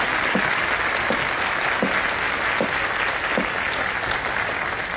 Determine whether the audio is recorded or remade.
recorded